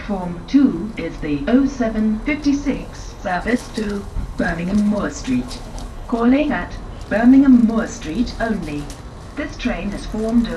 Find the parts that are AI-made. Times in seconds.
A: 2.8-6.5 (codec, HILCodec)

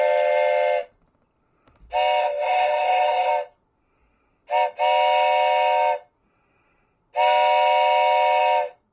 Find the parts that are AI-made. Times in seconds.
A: 2.2-3.3 (codec, HILCodec)

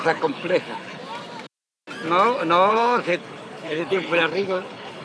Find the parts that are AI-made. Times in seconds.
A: 0.0-1.0 (codec, HILCodec); 2.7-5.0